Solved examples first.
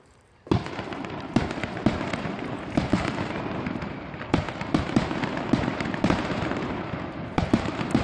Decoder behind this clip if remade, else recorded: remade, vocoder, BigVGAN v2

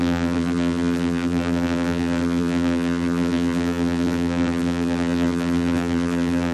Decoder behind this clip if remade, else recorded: remade, vocoder, BigVGAN v2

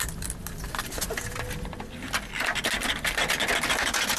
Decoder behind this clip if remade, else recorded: recorded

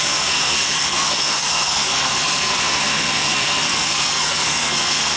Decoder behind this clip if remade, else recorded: remade, codec, SNAC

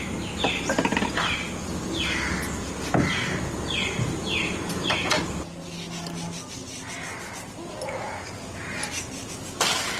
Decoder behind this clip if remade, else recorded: recorded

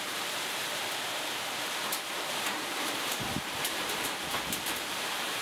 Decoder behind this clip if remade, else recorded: remade, vocoder, BigVGAN v2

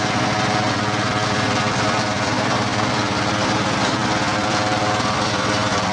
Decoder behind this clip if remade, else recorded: remade, vocoder, BigVGAN v2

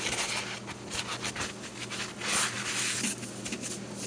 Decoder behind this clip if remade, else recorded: recorded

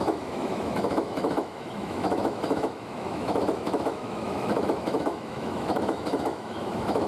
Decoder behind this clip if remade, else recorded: remade, autoencoder, DAC-VAE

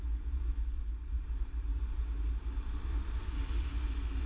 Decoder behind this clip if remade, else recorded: recorded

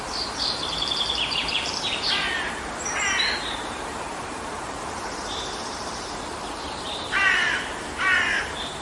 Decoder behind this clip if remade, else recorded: remade, vocoder, BigVGAN v2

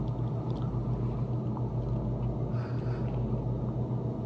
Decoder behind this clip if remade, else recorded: recorded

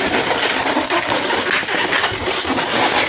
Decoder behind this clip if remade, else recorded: recorded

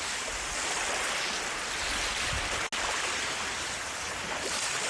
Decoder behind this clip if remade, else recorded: recorded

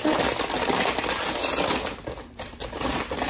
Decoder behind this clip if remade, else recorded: recorded